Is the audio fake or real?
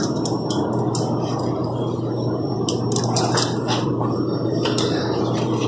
real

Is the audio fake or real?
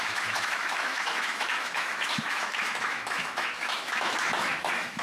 fake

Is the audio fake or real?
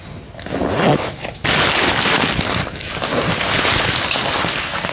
real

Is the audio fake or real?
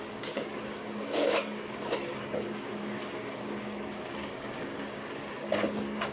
fake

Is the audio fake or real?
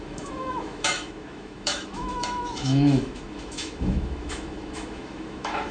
fake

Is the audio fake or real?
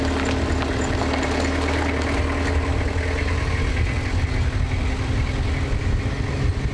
real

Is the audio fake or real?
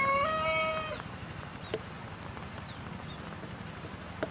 real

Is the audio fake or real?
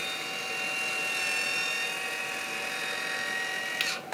real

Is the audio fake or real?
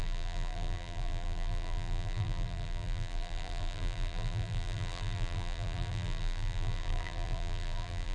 fake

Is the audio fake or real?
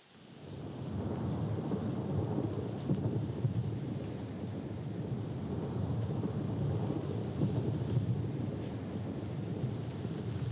real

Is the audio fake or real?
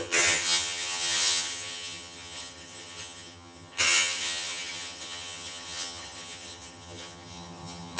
fake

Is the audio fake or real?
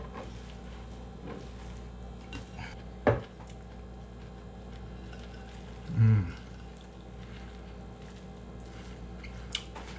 real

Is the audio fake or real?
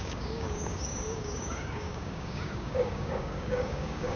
fake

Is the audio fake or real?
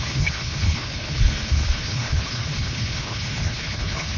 fake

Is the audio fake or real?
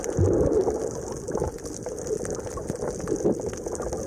real